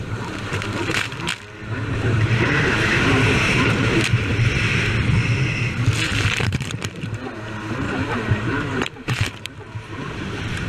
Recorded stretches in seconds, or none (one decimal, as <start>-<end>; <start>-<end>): 1.3-1.8; 4.3-6.2